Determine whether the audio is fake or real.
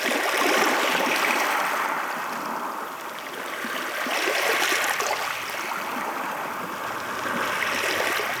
real